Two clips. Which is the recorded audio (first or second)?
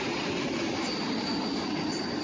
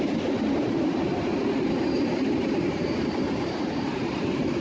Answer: first